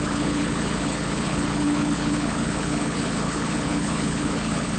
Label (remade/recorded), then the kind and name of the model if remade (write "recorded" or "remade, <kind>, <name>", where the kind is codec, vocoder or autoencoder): remade, codec, HILCodec